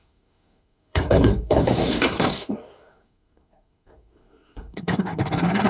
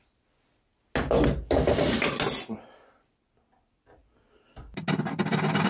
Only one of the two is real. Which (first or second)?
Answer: second